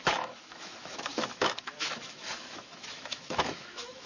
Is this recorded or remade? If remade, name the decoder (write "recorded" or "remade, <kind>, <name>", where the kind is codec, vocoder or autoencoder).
remade, autoencoder, DAC-VAE